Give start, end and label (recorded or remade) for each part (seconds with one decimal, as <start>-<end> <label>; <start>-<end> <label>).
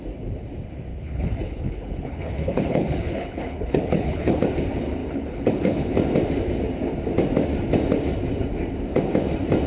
0.0-0.9 recorded; 0.9-4.4 remade; 4.4-5.0 recorded; 5.0-5.9 remade; 5.9-9.7 recorded